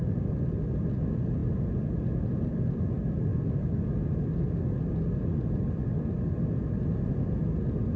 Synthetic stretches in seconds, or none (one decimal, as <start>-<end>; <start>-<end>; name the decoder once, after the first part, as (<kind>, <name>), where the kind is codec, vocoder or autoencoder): none